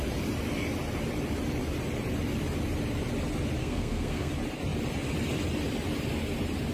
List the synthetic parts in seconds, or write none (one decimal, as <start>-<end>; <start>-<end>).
3.6-4.3